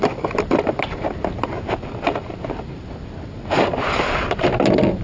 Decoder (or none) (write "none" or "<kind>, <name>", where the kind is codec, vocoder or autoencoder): none